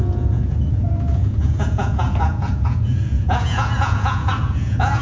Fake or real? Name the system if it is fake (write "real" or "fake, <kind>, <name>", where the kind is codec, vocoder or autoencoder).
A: fake, vocoder, Vocos